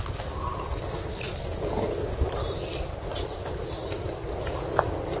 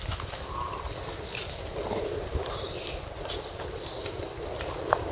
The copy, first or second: second